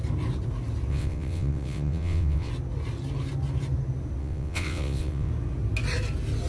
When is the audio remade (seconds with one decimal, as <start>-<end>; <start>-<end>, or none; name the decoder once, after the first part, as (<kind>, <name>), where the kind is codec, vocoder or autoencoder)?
0.9-2.5 (vocoder, WaveNeXt); 4.2-5.3